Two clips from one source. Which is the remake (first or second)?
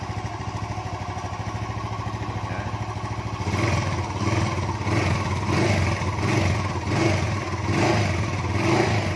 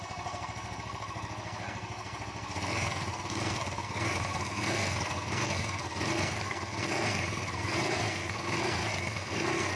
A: second